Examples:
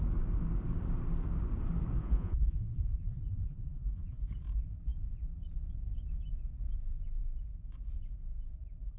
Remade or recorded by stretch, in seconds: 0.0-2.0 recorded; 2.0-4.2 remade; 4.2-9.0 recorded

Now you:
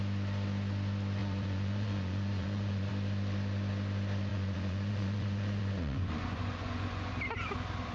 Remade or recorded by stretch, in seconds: 0.0-1.2 recorded; 1.2-2.9 remade; 2.9-4.3 recorded; 4.3-7.1 remade; 7.1-7.9 recorded

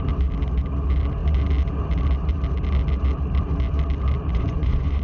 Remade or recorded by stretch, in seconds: 0.0-4.3 recorded; 4.3-5.0 remade